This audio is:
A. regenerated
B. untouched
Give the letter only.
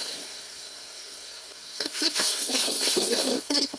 A